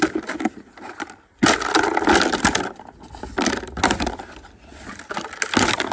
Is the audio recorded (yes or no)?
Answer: yes